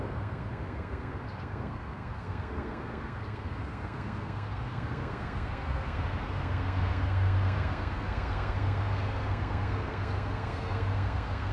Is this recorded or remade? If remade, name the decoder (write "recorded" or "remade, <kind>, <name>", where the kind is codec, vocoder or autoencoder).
remade, codec, SNAC